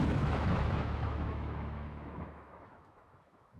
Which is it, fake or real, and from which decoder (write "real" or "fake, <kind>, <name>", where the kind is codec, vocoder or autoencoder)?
fake, autoencoder, DAC-VAE